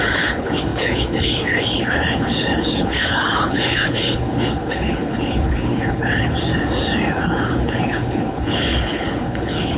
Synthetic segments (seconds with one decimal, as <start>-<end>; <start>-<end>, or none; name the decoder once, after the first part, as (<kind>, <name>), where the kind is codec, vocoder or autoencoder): 0.0-6.5 (codec, HILCodec); 7.3-9.8